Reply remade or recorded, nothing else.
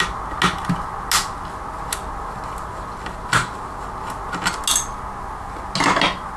recorded